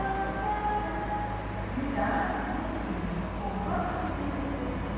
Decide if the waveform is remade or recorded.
recorded